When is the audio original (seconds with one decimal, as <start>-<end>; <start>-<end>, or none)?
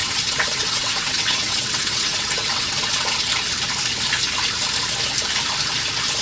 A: 3.3-6.2